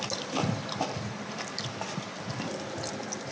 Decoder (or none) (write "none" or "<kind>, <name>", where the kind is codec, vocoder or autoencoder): none